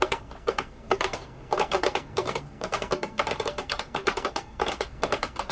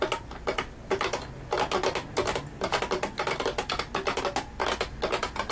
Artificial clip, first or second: first